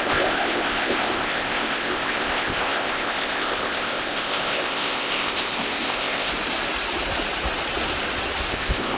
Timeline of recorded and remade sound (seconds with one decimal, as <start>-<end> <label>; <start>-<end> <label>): 0.0-6.3 remade; 6.3-8.5 recorded; 8.5-9.0 remade